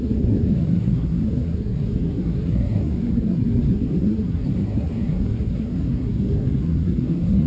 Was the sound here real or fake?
fake